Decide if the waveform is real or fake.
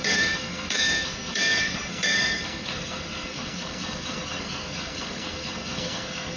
fake